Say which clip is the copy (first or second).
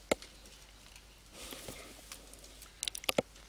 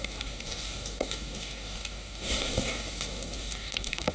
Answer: second